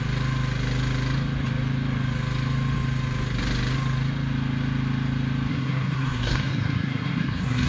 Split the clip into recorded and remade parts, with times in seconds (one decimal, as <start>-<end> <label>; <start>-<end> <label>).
0.0-5.5 recorded; 5.5-7.7 remade